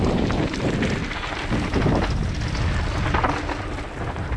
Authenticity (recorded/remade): recorded